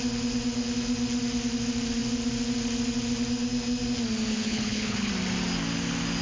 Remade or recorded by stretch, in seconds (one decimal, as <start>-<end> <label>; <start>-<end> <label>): 0.0-4.3 recorded; 4.3-5.1 remade; 5.1-6.2 recorded